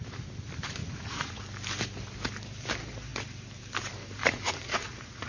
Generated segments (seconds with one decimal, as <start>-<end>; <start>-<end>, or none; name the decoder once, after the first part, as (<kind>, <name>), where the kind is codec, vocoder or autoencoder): 0.8-1.4 (vocoder, Vocos); 4.2-5.3